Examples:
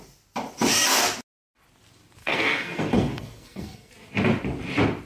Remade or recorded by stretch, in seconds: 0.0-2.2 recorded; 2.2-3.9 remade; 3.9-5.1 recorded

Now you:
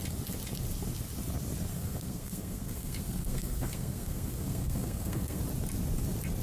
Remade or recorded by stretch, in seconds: 0.0-1.7 recorded; 1.7-5.4 remade; 5.4-6.4 recorded

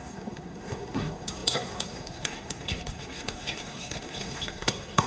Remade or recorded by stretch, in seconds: 0.0-5.1 remade

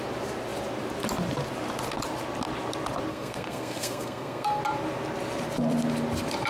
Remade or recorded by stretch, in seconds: 0.0-3.1 recorded; 3.1-4.6 remade; 4.6-6.5 recorded